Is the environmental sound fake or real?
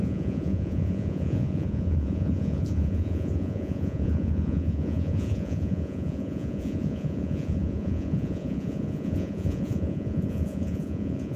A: fake